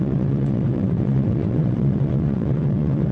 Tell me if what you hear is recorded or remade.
remade